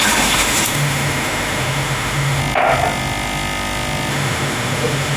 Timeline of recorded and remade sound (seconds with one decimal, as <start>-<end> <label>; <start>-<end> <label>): 0.0-2.4 remade; 2.4-4.1 recorded; 4.1-5.2 remade